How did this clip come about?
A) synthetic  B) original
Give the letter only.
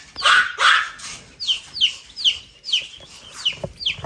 B